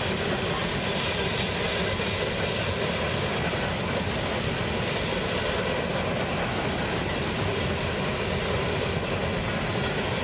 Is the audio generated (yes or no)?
no